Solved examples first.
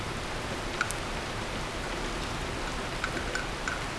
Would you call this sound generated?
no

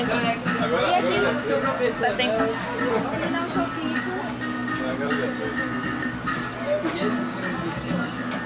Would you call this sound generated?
no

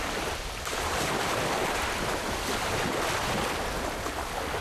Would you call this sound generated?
no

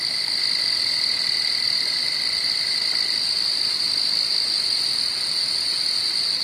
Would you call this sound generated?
no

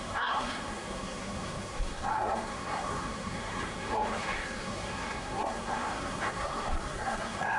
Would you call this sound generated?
yes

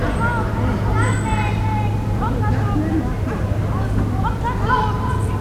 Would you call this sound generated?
no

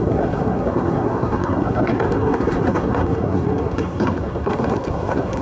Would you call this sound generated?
yes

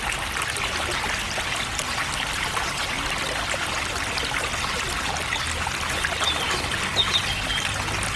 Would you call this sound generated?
no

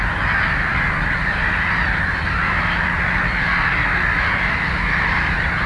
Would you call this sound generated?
no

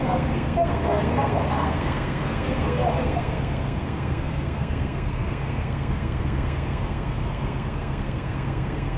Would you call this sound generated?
yes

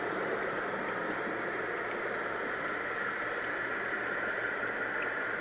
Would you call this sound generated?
no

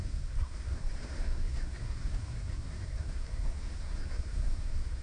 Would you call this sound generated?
yes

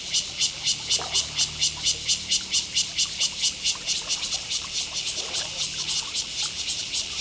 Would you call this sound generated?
no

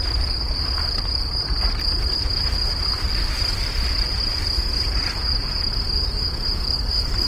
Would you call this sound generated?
no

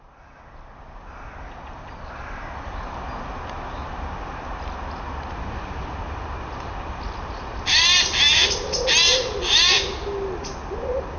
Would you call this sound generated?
no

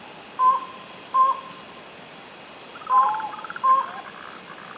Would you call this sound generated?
no